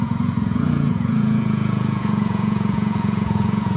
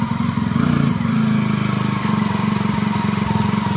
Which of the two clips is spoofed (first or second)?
first